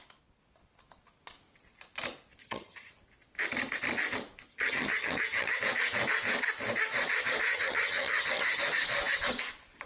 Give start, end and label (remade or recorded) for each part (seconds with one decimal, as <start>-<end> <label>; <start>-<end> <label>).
0.0-2.4 recorded; 2.4-2.9 remade; 2.9-4.5 recorded; 4.5-5.6 remade; 5.6-7.5 recorded; 7.5-8.6 remade; 8.6-9.9 recorded